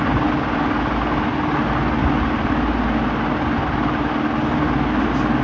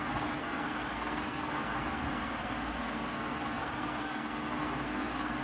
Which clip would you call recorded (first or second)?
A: first